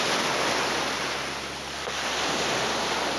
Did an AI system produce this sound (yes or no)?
no